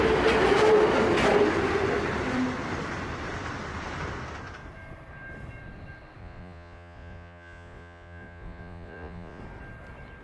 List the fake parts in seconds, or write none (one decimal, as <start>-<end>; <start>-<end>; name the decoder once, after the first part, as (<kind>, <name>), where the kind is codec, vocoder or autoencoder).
6.2-9.4 (vocoder, Vocos)